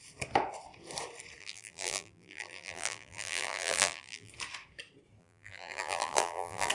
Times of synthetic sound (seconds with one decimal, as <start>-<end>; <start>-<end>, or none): 1.4-4.3; 5.2-6.7